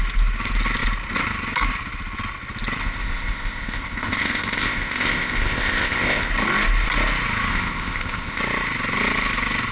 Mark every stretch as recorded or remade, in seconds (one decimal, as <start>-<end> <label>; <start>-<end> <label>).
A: 0.0-2.8 recorded; 2.8-6.3 remade; 6.3-7.5 recorded; 7.5-8.4 remade; 8.4-9.7 recorded